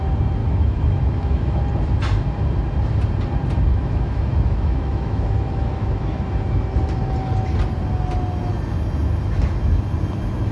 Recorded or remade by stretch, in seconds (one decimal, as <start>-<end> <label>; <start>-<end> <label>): 0.0-0.4 recorded; 0.4-1.6 remade; 1.6-3.7 recorded; 3.7-6.2 remade; 6.2-10.5 recorded